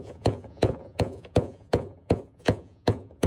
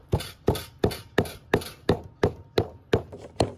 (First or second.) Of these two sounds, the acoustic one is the second